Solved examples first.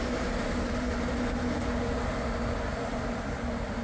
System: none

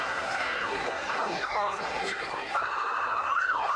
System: codec, SNAC